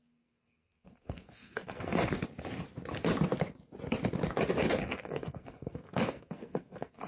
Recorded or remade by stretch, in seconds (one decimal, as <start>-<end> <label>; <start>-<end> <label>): 0.0-2.0 remade; 2.0-4.8 recorded; 4.8-7.1 remade